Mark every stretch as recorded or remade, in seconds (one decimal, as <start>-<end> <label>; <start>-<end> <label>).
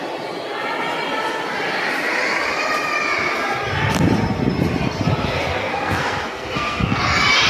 0.0-5.6 recorded; 5.6-7.0 remade; 7.0-7.5 recorded